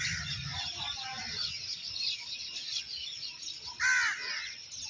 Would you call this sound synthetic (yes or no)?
no